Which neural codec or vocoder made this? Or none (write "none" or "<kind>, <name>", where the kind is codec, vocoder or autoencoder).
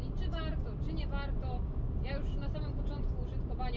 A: none